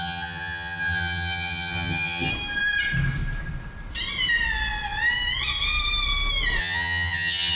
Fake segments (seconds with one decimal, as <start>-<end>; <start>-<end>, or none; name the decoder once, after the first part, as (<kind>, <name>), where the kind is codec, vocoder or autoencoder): 0.0-2.3 (vocoder, HiFi-GAN); 6.6-7.6